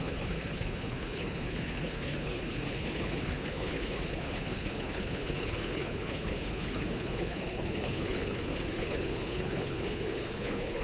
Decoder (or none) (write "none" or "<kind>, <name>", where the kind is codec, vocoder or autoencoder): codec, HILCodec